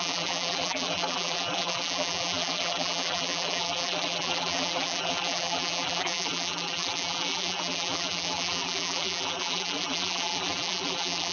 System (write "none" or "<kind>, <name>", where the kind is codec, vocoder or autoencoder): vocoder, BigVGAN v2